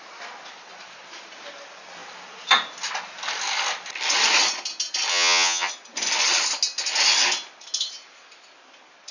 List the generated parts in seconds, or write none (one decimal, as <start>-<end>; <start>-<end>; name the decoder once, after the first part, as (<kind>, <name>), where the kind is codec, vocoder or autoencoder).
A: 5.1-5.7 (vocoder, HiFi-GAN)